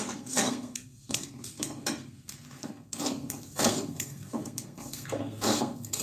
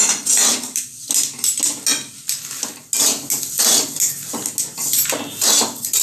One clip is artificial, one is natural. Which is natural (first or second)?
second